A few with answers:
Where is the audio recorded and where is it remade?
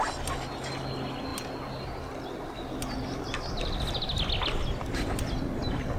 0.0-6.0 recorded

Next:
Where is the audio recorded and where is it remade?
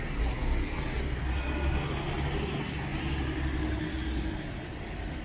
0.0-5.2 recorded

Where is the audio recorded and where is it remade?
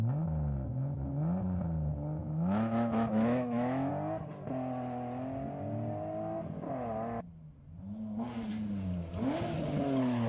0.0-2.2 recorded; 2.2-3.9 remade; 3.9-10.3 recorded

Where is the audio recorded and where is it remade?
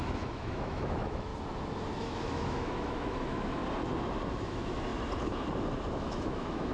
0.0-1.3 remade; 1.3-2.0 recorded; 2.0-3.6 remade; 3.6-4.3 recorded; 4.3-4.9 remade; 4.9-5.9 recorded; 5.9-6.7 remade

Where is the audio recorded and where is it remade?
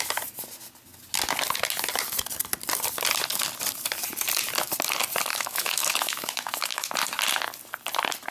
0.0-5.3 recorded; 5.3-6.9 remade; 6.9-8.3 recorded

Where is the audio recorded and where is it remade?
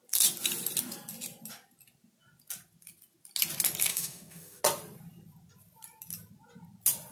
0.0-3.9 recorded; 3.9-4.6 remade; 4.6-7.1 recorded